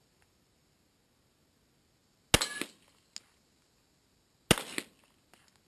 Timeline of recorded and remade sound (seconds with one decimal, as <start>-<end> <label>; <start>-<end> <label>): 0.0-5.7 recorded